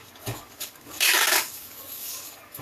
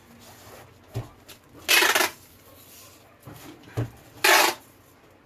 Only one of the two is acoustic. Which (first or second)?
second